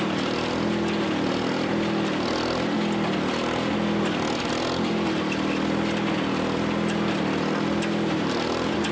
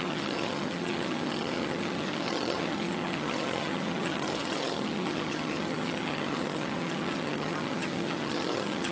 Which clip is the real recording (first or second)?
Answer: first